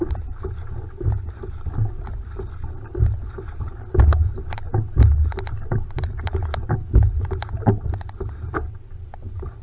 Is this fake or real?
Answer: real